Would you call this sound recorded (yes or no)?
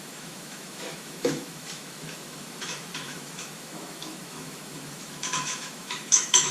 no